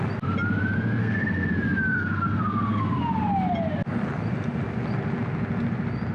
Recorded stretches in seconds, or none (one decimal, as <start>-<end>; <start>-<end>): 0.0-1.0; 1.5-1.9; 3.0-6.1